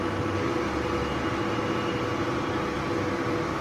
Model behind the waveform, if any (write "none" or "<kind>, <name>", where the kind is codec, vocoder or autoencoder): none